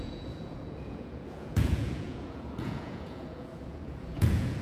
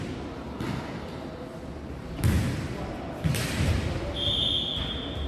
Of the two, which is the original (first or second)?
second